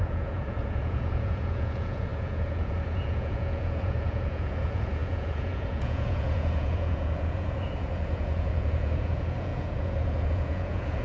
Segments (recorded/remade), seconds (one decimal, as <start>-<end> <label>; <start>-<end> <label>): 0.0-11.0 remade